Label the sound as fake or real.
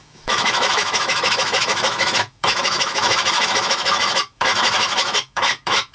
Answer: fake